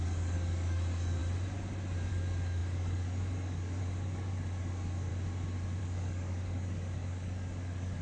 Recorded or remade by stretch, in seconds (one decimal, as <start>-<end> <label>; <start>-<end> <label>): 0.0-1.2 remade; 1.2-2.1 recorded; 2.1-5.1 remade; 5.1-5.8 recorded; 5.8-8.0 remade